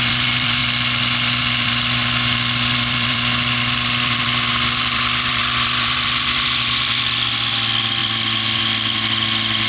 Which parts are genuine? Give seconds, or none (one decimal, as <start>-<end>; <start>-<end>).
0.6-1.4